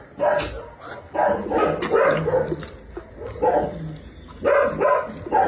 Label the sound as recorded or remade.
recorded